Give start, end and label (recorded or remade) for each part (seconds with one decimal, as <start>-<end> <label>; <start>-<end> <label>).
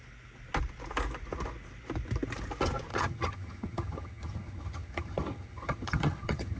0.0-2.9 recorded; 2.9-6.6 remade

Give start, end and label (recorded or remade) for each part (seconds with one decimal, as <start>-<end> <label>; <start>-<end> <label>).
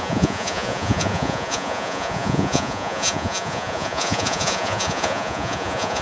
0.0-6.0 remade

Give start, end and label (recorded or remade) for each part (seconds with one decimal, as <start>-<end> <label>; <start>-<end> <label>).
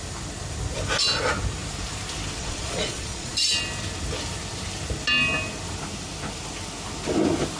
0.0-2.4 recorded; 2.4-3.3 remade; 3.3-7.6 recorded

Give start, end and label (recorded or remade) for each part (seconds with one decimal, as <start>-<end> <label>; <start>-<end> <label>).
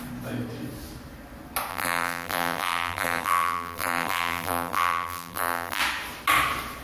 0.0-1.7 recorded; 1.7-5.8 remade; 5.8-6.8 recorded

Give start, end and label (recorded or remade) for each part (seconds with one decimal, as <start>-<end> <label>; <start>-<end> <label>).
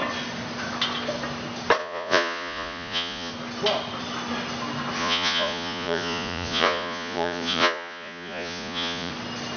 0.0-1.8 recorded; 1.8-3.3 remade; 3.3-5.0 recorded; 5.0-9.1 remade; 9.1-9.6 recorded